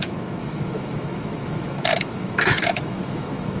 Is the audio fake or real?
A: fake